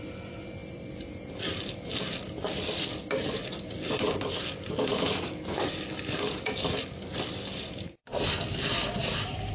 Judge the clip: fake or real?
real